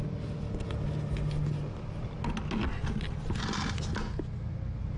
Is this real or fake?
real